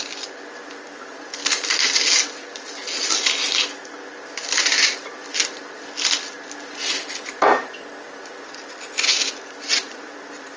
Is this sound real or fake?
real